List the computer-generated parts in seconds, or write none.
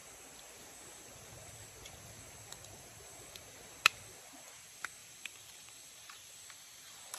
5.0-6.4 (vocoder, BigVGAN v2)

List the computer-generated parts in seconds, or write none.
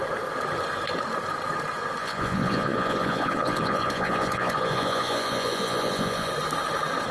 2.0-6.3 (vocoder, Vocos)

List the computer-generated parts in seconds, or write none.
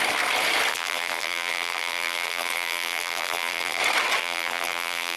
0.7-3.8 (vocoder, BigVGAN v2); 4.2-5.2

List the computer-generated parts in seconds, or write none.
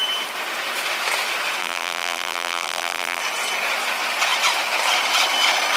1.6-3.2 (vocoder, BigVGAN v2)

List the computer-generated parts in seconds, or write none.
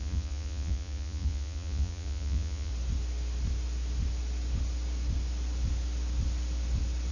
0.0-2.7 (vocoder, Vocos)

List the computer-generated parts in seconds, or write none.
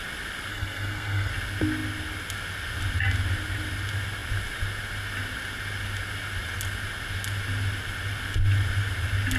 0.5-1.3 (codec, SNAC)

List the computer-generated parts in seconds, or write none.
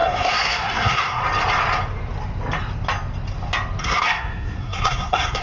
0.0-1.2 (codec, SNAC); 3.8-5.4